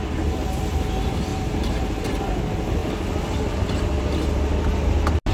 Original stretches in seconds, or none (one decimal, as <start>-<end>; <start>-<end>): 0.0-1.3; 1.8-2.8; 3.8-5.3